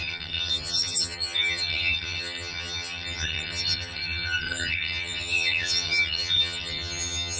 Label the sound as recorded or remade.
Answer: remade